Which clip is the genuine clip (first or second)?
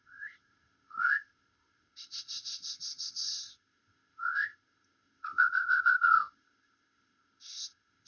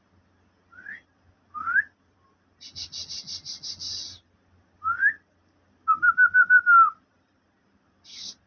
second